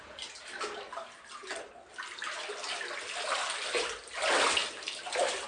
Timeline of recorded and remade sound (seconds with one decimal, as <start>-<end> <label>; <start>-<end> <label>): 0.0-5.5 recorded